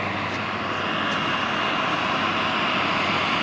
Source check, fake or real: real